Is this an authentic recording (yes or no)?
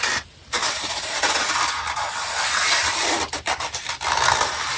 no